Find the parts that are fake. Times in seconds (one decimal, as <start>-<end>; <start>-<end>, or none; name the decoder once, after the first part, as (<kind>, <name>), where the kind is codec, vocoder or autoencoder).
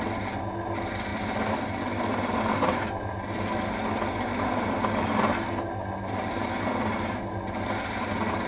none